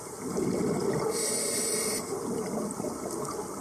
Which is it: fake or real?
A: real